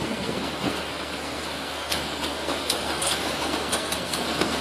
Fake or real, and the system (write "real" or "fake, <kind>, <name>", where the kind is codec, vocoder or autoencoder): fake, codec, SNAC